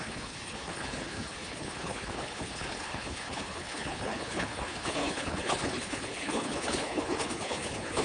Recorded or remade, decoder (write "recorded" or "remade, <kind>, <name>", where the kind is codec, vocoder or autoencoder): remade, codec, HILCodec